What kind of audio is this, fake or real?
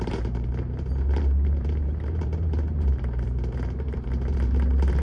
fake